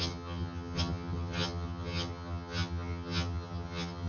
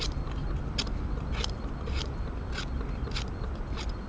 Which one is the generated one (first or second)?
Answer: first